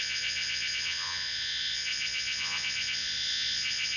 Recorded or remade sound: remade